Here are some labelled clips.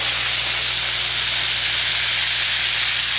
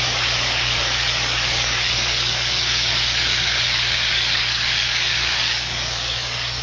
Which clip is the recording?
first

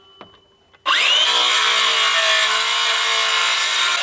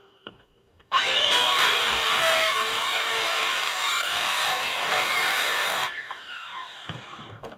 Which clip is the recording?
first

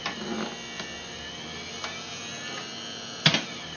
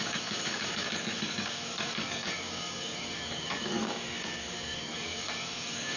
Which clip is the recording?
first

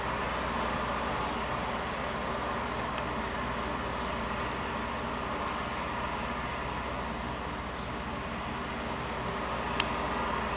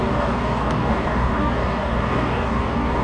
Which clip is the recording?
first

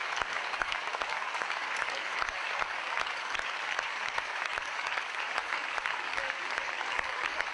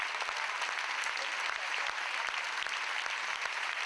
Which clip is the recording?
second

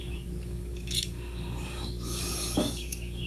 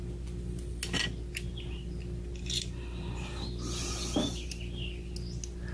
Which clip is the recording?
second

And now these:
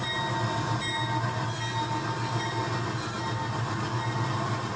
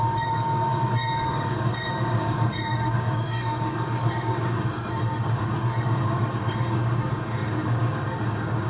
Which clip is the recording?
first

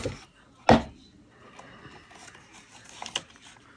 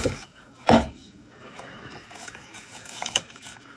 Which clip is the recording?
first